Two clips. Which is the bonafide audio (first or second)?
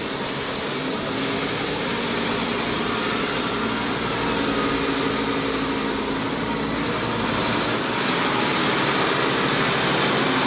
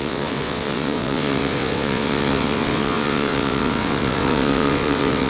first